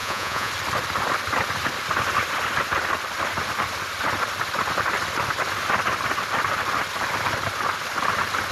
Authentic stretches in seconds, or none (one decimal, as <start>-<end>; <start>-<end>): 0.5-8.5